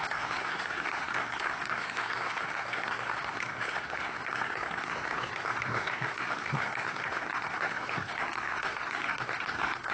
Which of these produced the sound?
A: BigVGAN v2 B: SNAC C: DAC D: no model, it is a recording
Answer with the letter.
B